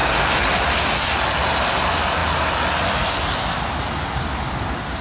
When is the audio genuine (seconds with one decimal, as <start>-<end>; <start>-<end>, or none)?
0.0-5.0